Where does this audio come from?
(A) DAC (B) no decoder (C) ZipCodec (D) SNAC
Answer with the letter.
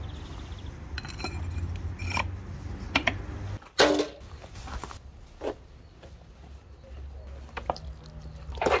B